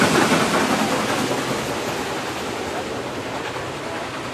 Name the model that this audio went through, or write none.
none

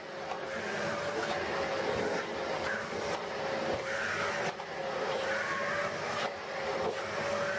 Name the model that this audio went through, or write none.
none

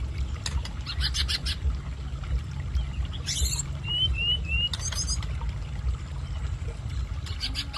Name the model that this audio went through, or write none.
none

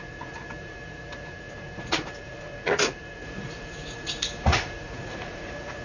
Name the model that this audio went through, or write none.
vocoder, Vocos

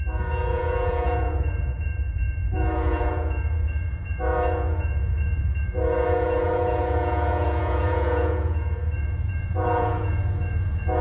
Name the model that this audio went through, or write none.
vocoder, Vocos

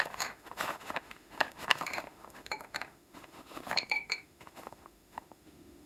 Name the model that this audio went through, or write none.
autoencoder, DAC-VAE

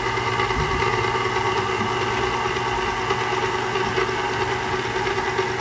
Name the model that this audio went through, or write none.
none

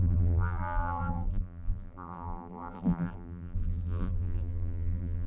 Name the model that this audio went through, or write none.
vocoder, BigVGAN v2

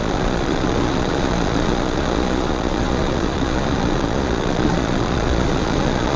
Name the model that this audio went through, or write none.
vocoder, Vocos